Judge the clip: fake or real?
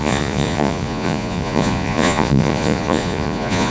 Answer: fake